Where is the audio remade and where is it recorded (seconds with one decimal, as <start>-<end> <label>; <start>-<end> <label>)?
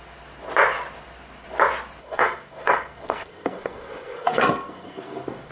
0.0-2.0 recorded; 2.0-5.5 remade